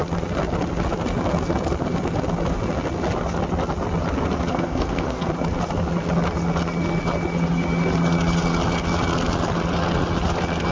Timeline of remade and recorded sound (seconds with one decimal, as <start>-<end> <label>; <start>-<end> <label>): 0.0-4.5 recorded; 4.5-5.3 remade; 5.3-10.7 recorded